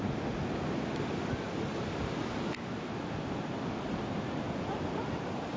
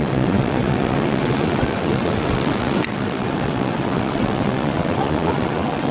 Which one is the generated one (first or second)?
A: second